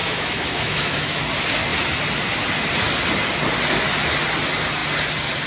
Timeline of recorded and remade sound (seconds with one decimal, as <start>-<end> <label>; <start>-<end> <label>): 0.0-1.2 remade; 1.2-5.5 recorded